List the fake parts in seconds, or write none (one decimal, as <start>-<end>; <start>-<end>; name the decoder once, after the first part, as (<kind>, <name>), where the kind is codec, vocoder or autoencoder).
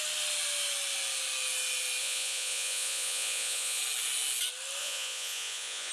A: 2.0-3.8 (vocoder, Vocos); 4.8-5.9